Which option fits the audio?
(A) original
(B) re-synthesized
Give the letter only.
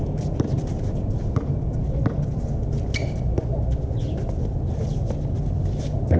A